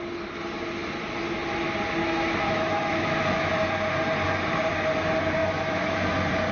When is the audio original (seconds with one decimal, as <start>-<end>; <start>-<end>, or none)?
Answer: 0.0-2.0; 3.6-5.4; 6.1-6.5